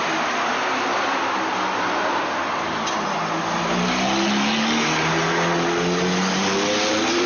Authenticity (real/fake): real